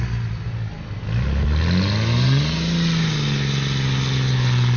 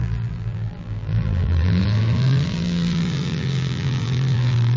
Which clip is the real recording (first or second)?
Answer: first